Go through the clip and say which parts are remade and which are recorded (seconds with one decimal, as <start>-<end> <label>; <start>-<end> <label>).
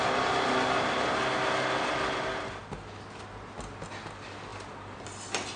0.0-5.6 recorded